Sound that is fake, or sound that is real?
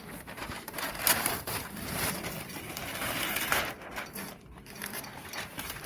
fake